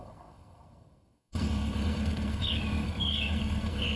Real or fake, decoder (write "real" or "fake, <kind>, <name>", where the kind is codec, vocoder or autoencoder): fake, codec, SNAC